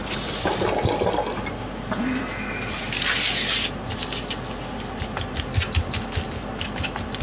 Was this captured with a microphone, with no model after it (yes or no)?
yes